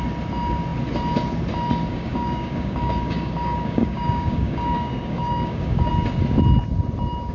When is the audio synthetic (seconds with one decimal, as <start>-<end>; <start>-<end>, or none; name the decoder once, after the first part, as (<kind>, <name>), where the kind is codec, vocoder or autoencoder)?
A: 1.9-5.9 (codec, DAC)